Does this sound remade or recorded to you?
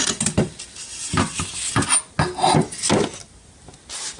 recorded